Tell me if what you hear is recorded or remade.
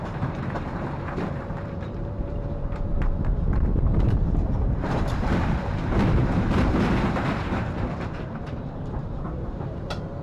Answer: remade